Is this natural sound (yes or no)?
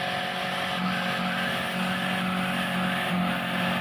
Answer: yes